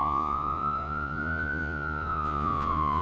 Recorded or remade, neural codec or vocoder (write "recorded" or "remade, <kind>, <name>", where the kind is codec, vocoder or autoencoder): remade, vocoder, Vocos